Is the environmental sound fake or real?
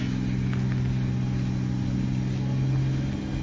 real